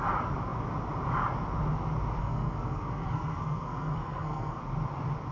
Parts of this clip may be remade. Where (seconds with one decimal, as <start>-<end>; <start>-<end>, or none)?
2.2-4.6